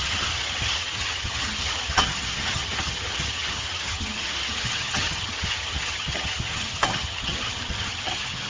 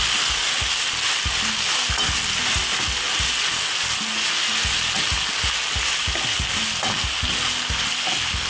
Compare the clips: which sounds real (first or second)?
second